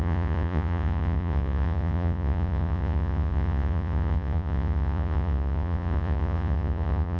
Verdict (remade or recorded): remade